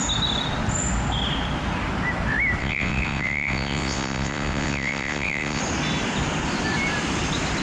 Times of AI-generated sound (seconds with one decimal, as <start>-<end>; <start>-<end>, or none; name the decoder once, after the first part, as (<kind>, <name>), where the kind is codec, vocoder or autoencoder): 2.6-5.6 (vocoder, WaveNeXt)